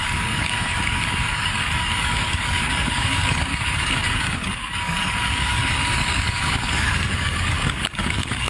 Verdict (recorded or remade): remade